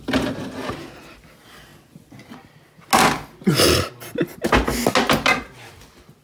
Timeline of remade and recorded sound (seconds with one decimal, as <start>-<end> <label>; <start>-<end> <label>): 0.0-1.7 remade; 1.7-5.4 recorded; 5.4-6.2 remade